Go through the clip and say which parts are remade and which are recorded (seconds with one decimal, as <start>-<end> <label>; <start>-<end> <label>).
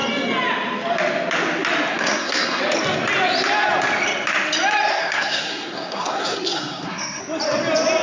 0.0-1.9 recorded; 1.9-2.6 remade; 2.6-4.9 recorded; 4.9-7.2 remade; 7.2-8.0 recorded